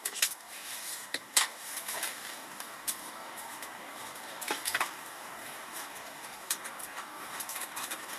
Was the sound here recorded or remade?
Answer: remade